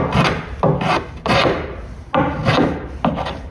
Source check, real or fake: real